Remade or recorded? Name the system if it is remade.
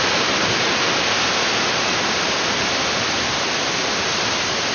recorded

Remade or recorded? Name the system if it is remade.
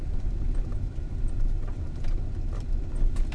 recorded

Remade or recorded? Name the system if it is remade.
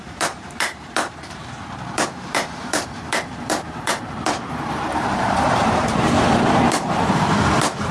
remade, vocoder, BigVGAN v2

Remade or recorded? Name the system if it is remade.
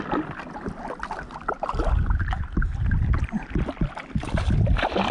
recorded